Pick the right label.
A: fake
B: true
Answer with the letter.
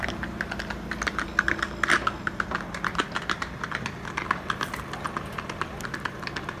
B